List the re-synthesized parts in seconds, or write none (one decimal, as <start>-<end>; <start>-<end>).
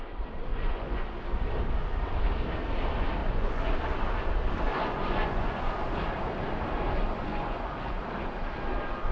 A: 0.5-1.2; 3.2-3.7; 4.7-5.7; 7.3-8.0